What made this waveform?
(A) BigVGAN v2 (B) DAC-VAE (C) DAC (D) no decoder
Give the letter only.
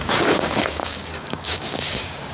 C